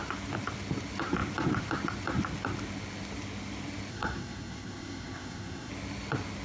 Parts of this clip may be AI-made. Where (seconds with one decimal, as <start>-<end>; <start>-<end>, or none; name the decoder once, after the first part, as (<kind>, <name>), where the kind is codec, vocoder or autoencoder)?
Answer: 3.9-5.7 (codec, SNAC)